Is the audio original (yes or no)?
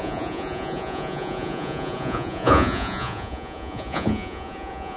no